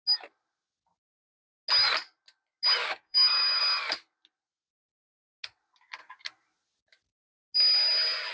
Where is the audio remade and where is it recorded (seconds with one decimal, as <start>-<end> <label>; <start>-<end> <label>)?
0.0-2.8 recorded; 2.8-3.6 remade; 3.6-8.3 recorded